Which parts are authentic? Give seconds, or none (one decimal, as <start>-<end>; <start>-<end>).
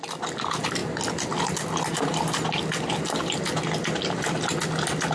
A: 0.0-5.1